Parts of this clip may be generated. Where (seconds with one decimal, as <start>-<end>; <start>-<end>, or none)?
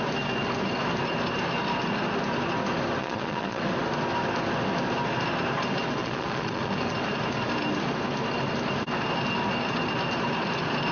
3.0-3.6; 6.0-6.7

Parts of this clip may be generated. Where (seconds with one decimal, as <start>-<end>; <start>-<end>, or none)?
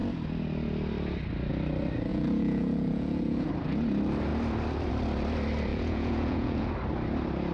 2.1-3.5; 5.7-6.7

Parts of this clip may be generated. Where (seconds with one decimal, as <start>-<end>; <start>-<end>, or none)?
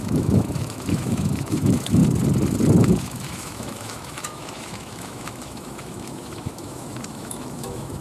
0.0-2.0; 2.8-8.0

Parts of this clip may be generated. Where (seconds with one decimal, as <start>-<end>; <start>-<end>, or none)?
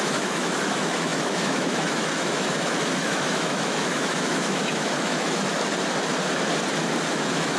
0.0-5.5; 7.1-7.6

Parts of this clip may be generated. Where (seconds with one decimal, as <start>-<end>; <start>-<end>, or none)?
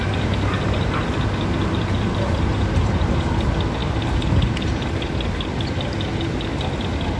1.6-3.1; 3.8-5.1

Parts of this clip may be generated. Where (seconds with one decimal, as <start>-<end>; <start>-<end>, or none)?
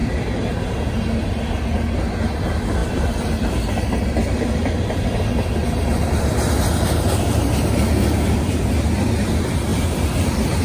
0.0-0.8; 2.8-7.2; 9.7-10.6